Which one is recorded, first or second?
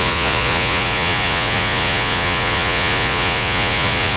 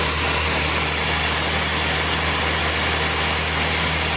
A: second